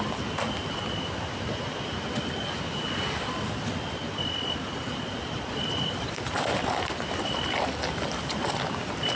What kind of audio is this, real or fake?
real